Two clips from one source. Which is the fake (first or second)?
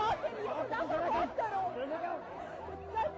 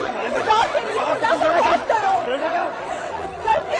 second